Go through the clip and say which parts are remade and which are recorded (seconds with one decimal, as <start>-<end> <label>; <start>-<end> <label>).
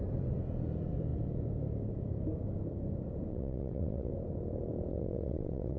0.0-3.3 recorded; 3.3-4.1 remade; 4.1-4.9 recorded; 4.9-5.8 remade